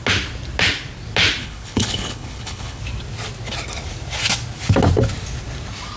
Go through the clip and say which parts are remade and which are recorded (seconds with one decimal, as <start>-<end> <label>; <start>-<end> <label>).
0.0-1.4 recorded; 1.4-2.8 remade; 2.8-6.0 recorded